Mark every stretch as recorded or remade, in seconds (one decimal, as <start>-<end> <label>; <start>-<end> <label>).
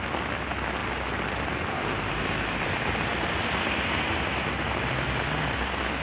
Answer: 0.0-6.0 recorded